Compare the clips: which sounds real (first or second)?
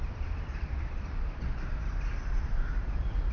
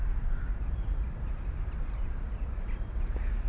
second